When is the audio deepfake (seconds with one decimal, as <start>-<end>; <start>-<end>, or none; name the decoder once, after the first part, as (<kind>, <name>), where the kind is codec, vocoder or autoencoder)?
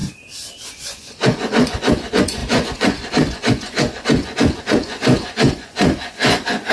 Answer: 0.7-6.7 (vocoder, Vocos)